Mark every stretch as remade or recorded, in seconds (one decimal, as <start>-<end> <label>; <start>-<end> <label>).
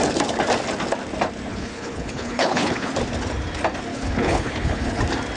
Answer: 0.0-1.5 recorded; 1.5-2.9 remade; 2.9-3.9 recorded; 3.9-5.0 remade; 5.0-5.4 recorded